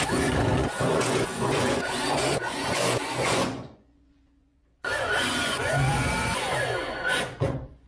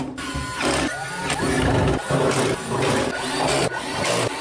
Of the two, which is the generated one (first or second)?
first